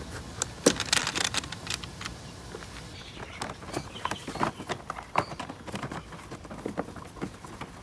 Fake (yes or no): no